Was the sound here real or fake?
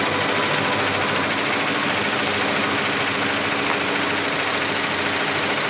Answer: real